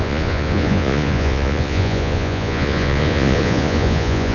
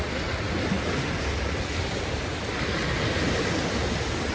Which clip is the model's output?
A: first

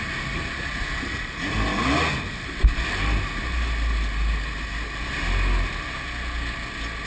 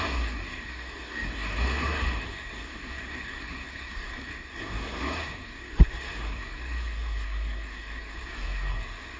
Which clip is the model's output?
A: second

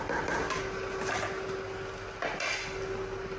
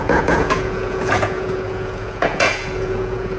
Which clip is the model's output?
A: second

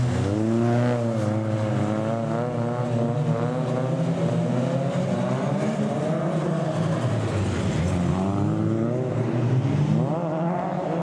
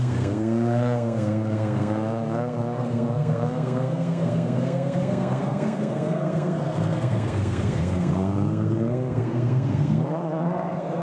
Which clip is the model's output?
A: second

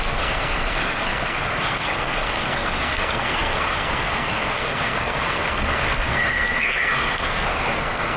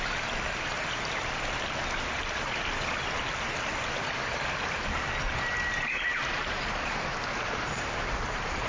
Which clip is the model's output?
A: first